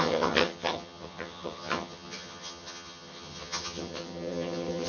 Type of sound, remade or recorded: remade